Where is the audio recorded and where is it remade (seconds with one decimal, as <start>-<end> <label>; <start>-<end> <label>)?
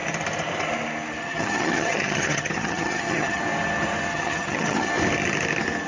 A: 0.0-1.2 recorded; 1.2-3.4 remade; 3.4-4.1 recorded; 4.1-4.9 remade; 4.9-5.9 recorded